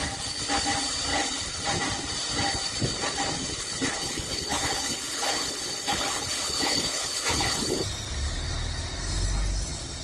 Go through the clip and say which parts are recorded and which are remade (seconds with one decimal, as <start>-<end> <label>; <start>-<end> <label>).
0.0-1.1 recorded; 1.1-1.6 remade; 1.6-3.4 recorded; 3.4-7.8 remade; 7.8-10.0 recorded